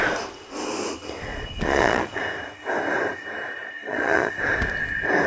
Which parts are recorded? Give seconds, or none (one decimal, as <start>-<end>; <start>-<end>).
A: 0.0-1.3; 2.2-3.6; 4.3-5.3